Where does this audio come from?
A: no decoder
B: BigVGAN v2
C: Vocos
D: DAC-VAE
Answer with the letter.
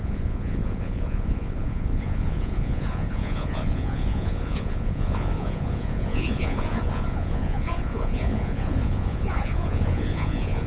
C